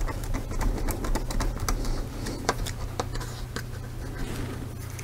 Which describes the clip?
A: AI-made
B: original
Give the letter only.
B